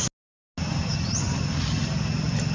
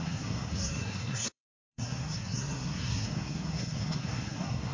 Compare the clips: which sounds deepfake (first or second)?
second